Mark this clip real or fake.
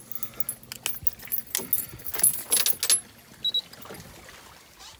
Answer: real